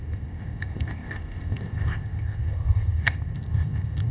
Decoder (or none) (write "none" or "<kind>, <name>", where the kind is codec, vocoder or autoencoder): codec, ZipCodec